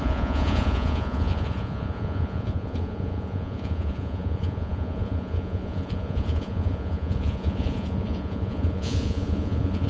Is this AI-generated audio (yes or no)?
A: yes